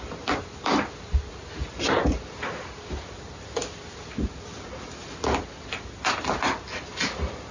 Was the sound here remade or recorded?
recorded